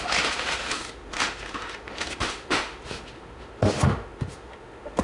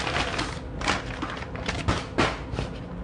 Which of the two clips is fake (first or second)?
first